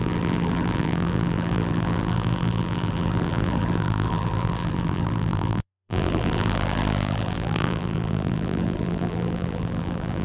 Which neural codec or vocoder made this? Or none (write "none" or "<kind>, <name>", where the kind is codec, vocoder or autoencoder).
vocoder, BigVGAN v2